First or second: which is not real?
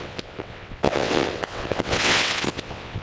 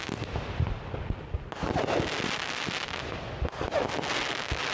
first